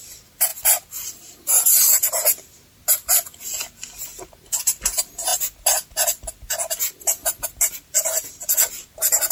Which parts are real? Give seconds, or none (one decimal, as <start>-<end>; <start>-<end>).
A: 0.0-9.3